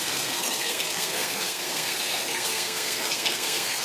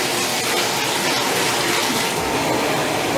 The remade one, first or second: first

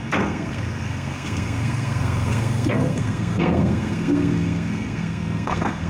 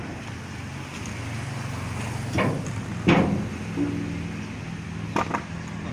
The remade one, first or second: first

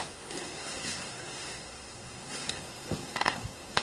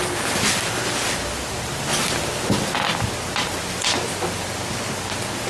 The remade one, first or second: first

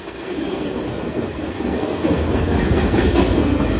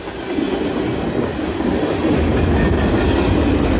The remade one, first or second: first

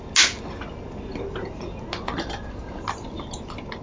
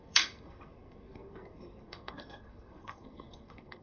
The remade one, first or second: second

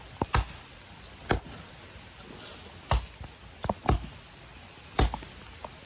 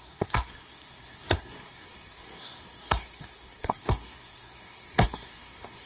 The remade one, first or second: second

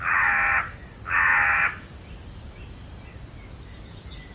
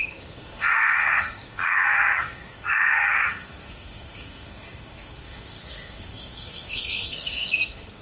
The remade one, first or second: second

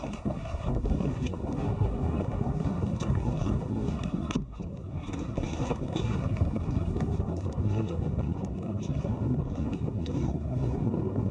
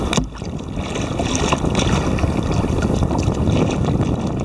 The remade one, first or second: first